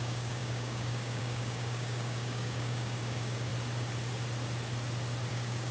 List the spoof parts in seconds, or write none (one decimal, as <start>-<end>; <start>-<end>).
0.0-3.5; 5.3-5.7